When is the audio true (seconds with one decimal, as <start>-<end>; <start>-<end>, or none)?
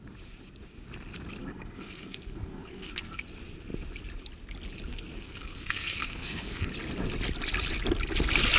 0.0-1.4; 3.2-4.9; 6.7-8.6